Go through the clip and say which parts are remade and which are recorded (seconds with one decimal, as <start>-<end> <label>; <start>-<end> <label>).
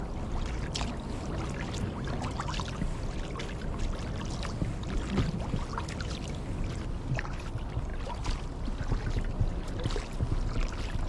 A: 0.0-11.1 recorded